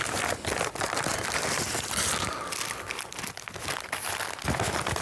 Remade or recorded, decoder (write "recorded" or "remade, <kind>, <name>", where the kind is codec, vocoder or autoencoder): recorded